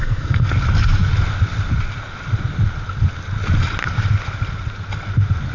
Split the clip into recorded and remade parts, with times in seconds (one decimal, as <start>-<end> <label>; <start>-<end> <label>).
0.0-0.5 remade; 0.5-5.5 recorded